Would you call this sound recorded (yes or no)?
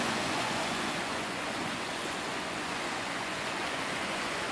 no